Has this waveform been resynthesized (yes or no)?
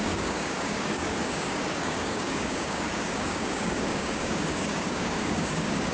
yes